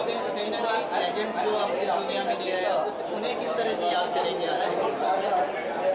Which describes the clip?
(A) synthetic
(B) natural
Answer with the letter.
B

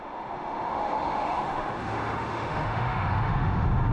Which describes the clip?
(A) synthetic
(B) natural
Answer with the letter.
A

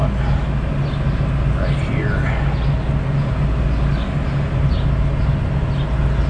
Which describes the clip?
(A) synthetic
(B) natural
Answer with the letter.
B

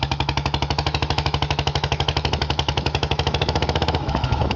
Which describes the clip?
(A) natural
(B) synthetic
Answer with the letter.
B